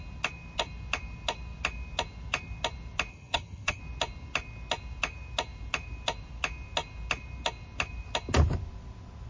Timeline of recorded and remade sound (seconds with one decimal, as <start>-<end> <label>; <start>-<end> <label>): 0.0-3.1 recorded; 3.1-3.8 remade; 3.8-9.3 recorded